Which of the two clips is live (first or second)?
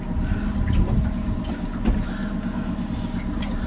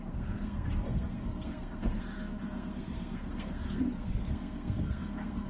first